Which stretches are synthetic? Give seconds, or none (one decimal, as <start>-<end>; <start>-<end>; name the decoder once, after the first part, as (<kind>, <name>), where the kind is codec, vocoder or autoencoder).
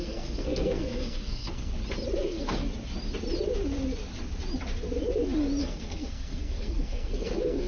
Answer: 0.0-1.7 (codec, SNAC); 2.2-2.6; 5.6-7.7